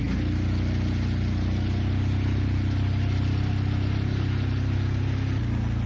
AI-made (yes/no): no